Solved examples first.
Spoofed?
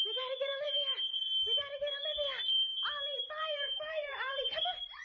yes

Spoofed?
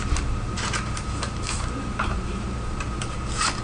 yes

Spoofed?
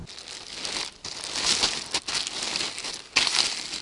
no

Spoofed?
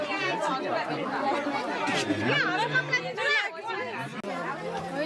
no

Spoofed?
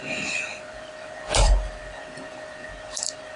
yes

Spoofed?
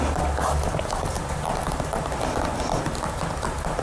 no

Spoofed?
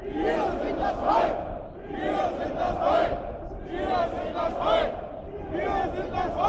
yes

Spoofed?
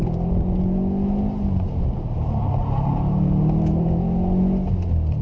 no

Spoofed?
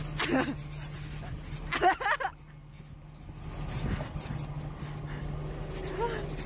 no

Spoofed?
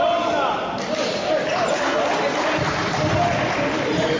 no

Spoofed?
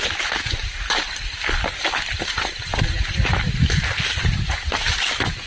no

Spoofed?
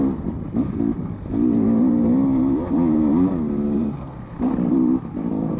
no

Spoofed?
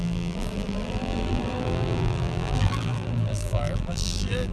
yes